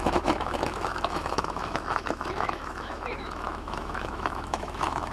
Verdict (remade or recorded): remade